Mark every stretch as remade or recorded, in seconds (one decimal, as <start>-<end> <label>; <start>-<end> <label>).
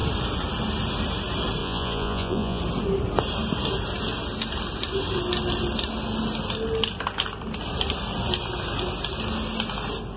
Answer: 0.0-1.6 recorded; 1.6-2.6 remade; 2.6-10.2 recorded